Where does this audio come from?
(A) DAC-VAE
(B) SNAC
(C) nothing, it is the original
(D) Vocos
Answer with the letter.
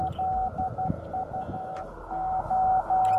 C